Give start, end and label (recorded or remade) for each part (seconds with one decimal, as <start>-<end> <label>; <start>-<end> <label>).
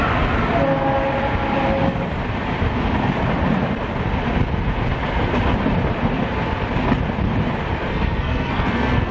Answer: 0.0-7.9 recorded; 7.9-9.1 remade